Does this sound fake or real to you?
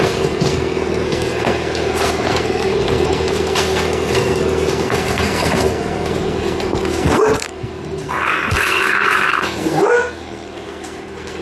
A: fake